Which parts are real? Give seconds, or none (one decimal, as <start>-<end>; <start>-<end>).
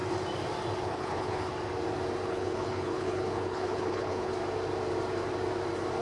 0.0-0.8; 1.5-2.3; 4.3-6.0